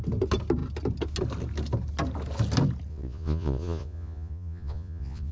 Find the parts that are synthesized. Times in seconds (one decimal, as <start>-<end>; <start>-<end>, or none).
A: 2.9-5.3